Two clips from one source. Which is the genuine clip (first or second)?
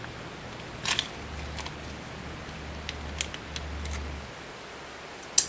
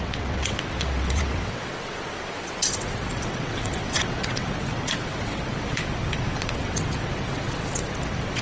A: first